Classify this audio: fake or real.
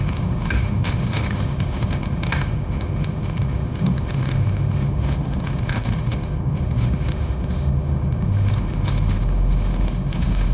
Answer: fake